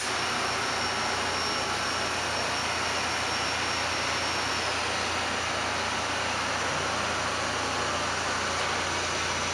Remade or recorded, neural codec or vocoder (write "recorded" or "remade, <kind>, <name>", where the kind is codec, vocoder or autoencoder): recorded